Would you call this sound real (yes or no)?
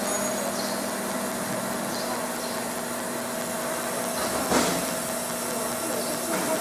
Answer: yes